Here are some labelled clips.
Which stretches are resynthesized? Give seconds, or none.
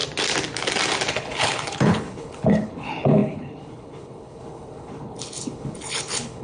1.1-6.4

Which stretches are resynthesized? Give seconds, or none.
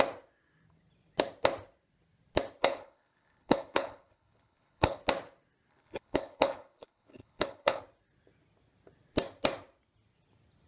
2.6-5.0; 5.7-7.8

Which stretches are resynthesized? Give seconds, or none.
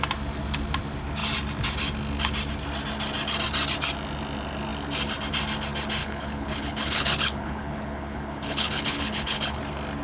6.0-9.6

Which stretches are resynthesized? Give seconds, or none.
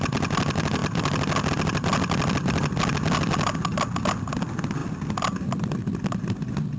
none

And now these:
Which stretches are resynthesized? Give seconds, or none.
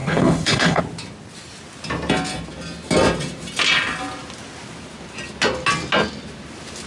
0.0-0.8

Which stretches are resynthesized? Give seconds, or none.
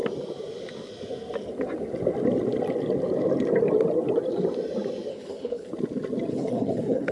5.1-5.7; 6.3-7.1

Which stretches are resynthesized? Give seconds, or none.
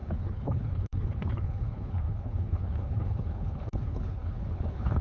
0.0-5.0